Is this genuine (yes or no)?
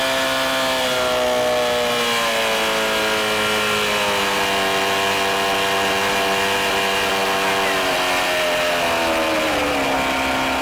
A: yes